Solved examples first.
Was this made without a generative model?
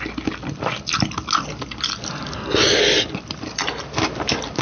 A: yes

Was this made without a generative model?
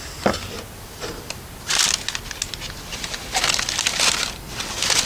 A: yes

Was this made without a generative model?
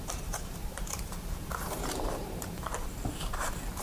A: no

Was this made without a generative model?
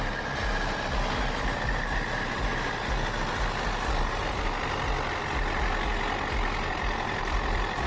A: yes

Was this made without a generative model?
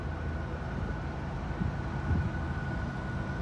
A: yes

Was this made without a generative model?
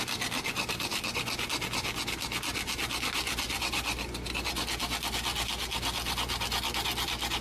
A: yes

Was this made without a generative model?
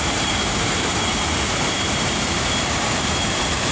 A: no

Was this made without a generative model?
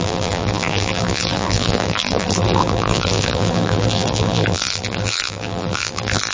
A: no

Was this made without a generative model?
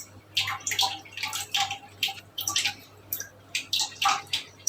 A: no